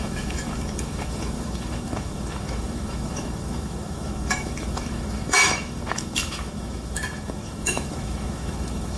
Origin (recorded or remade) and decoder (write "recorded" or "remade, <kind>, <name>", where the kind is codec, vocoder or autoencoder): remade, autoencoder, DAC-VAE